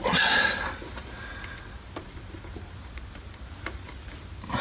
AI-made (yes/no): no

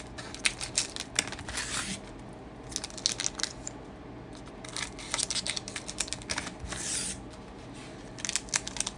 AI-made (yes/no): no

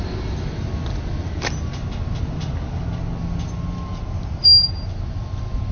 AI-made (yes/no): no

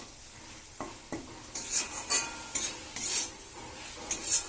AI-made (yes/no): no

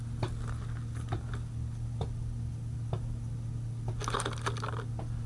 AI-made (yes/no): no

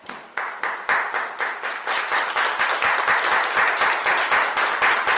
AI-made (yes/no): no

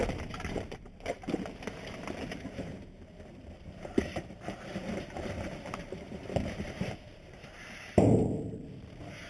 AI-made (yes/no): yes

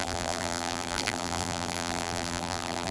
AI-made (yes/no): yes